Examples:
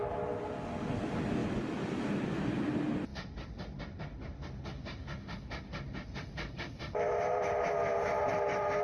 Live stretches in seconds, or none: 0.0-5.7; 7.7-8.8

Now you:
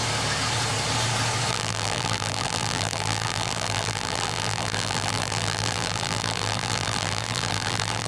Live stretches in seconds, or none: 0.0-1.5

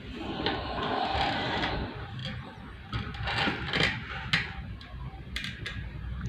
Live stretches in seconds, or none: 0.9-1.7; 2.2-5.0

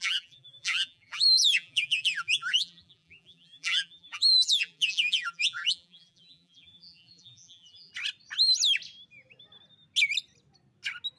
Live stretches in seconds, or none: 7.9-11.2

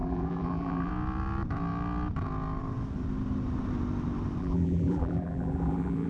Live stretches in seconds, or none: 0.9-4.4

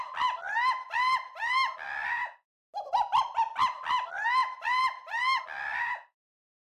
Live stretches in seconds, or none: 0.0-6.8